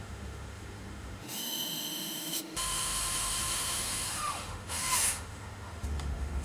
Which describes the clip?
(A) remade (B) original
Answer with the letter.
A